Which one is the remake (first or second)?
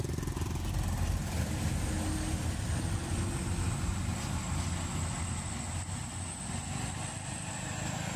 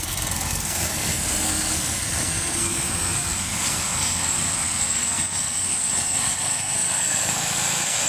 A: second